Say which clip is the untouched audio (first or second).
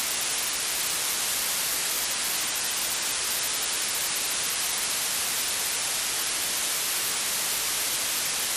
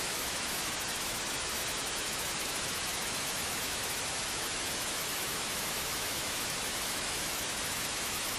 first